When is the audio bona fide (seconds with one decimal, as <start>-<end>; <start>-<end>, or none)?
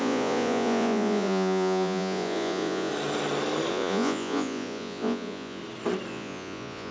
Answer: 2.9-3.7; 5.6-6.1